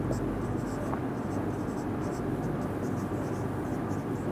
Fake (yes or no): no